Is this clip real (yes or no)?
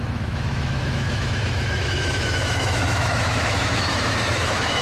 no